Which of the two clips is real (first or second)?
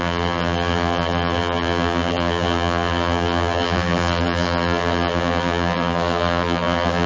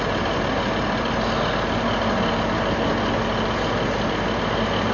second